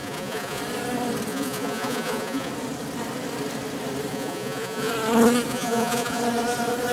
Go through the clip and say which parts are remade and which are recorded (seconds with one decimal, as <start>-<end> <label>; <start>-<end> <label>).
0.0-0.6 remade; 0.6-1.3 recorded; 1.3-2.5 remade; 2.5-4.1 recorded; 4.1-4.9 remade; 4.9-5.5 recorded; 5.5-6.2 remade; 6.2-6.9 recorded